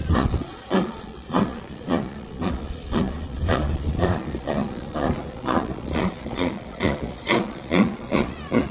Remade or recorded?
remade